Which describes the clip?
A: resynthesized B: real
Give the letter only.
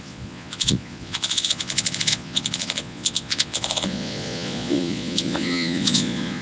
A